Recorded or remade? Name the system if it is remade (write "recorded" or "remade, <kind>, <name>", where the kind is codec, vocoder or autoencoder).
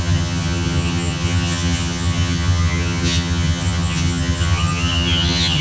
remade, vocoder, HiFi-GAN